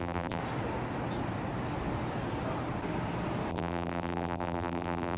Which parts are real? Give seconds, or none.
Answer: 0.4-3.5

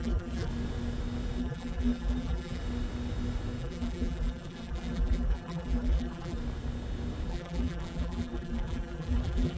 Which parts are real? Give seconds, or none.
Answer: 0.5-1.4; 2.6-3.6; 6.4-7.3